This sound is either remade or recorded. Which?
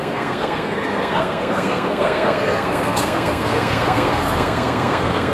remade